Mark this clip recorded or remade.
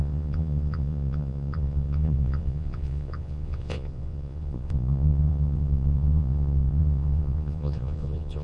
remade